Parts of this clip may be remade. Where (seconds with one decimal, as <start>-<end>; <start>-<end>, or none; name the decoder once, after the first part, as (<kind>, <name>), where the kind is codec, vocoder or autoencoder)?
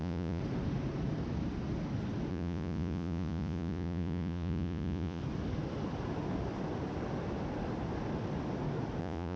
0.0-0.4 (vocoder, Vocos); 2.3-5.2; 9.0-9.4